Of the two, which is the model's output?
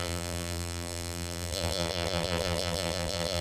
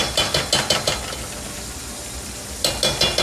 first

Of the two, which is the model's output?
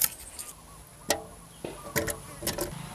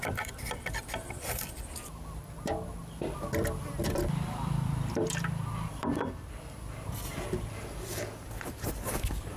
second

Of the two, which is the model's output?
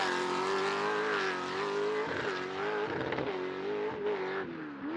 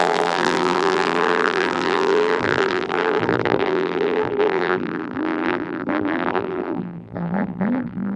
second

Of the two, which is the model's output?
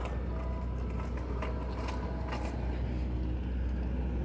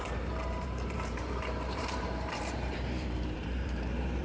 second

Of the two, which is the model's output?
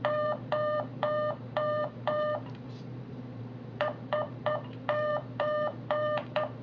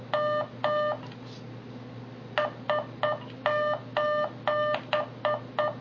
first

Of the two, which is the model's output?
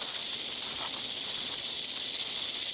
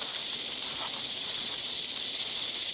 second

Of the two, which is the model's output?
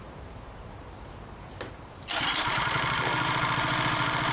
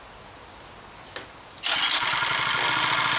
first